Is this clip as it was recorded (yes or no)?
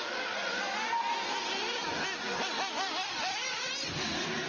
yes